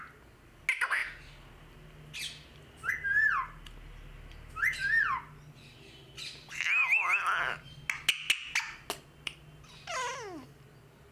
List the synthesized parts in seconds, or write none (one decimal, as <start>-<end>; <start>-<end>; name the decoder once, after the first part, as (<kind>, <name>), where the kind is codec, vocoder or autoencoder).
none